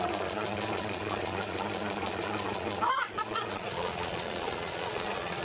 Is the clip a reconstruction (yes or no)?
yes